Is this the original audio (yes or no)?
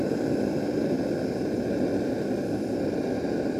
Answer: yes